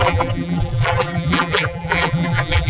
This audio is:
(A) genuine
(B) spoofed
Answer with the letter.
B